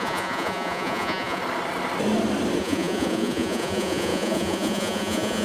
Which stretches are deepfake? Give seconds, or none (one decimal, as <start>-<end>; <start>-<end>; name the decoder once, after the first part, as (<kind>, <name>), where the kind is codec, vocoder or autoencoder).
0.0-1.4 (vocoder, Vocos); 2.6-5.4